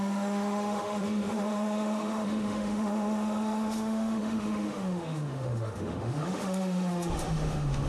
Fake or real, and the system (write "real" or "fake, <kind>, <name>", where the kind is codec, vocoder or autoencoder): fake, autoencoder, DAC-VAE